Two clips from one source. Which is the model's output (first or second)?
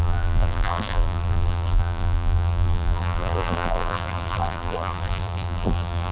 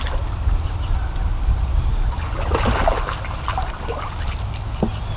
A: first